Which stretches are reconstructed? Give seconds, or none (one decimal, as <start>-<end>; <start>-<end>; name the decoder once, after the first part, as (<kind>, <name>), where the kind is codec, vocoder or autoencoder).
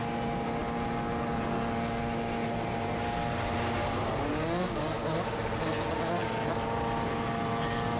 none